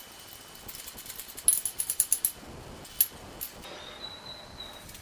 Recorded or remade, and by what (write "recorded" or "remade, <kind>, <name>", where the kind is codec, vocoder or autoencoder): recorded